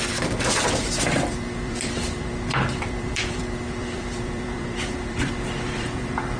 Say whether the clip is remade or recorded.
remade